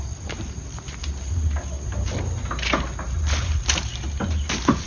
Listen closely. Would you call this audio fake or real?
real